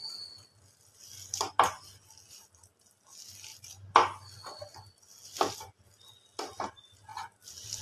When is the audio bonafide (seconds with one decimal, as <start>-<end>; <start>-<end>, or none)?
0.0-7.8